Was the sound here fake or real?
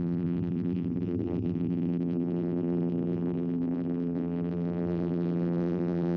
fake